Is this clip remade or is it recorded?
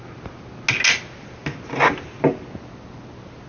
recorded